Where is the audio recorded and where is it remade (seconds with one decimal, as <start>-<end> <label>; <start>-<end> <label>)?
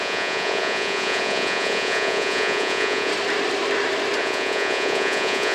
0.0-3.1 remade; 3.1-4.2 recorded; 4.2-5.5 remade